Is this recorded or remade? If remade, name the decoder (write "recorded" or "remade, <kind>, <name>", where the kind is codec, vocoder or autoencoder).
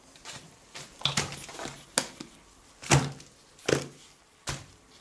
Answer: recorded